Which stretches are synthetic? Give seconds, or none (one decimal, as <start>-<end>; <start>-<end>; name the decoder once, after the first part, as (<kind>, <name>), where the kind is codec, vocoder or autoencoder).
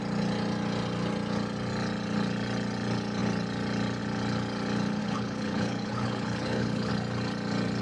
5.0-6.9 (codec, HILCodec)